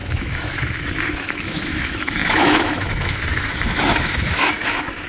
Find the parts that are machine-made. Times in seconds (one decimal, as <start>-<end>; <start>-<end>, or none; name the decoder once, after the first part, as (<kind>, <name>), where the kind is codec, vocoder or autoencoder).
0.0-5.1 (autoencoder, DAC-VAE)